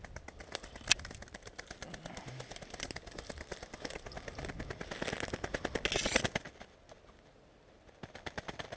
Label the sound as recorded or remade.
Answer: recorded